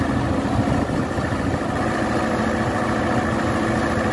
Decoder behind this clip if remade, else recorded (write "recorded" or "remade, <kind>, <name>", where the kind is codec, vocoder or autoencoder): recorded